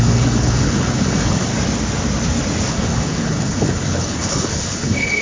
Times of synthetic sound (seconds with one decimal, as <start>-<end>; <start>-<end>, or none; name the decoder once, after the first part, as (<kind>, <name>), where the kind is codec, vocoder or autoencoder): 0.0-1.5 (codec, HILCodec); 2.7-5.2